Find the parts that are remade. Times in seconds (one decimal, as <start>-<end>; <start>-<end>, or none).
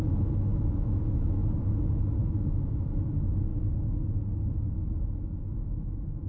0.0-1.4; 2.2-3.5; 5.4-6.3